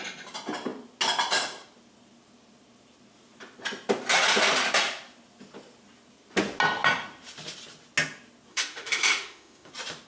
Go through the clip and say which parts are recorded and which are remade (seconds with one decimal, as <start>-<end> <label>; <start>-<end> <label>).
0.0-8.5 recorded; 8.5-9.7 remade; 9.7-10.1 recorded